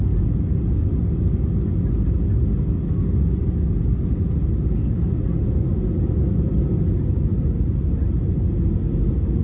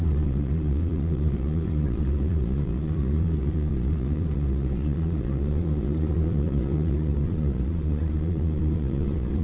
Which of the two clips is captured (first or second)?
first